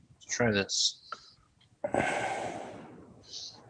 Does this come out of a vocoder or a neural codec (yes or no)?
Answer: no